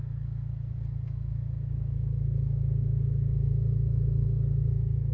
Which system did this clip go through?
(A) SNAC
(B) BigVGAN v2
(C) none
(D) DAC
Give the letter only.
A